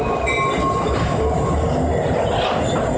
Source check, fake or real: real